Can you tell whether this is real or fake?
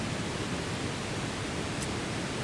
real